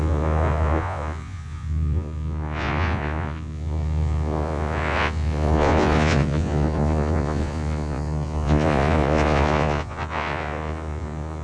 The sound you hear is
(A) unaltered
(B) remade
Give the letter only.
B